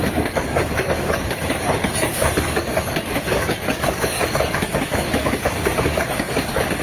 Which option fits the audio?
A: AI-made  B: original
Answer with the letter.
A